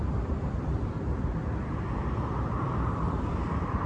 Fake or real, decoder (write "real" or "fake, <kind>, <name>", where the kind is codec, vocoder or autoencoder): fake, vocoder, BigVGAN v2